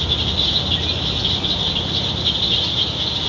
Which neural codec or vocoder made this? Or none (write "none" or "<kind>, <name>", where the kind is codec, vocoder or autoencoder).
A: none